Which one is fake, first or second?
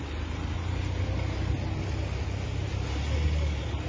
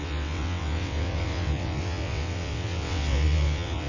second